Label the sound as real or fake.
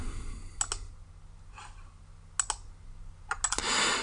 real